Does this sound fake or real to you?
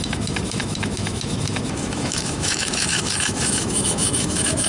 fake